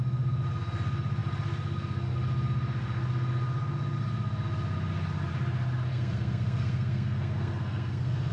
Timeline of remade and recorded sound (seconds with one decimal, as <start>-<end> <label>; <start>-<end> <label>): 0.0-5.9 recorded; 5.9-8.3 remade